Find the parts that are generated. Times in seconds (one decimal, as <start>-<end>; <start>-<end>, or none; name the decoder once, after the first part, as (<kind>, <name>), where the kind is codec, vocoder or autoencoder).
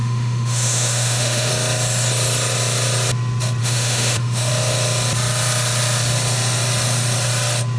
0.0-1.5 (autoencoder, DAC-VAE); 3.6-4.5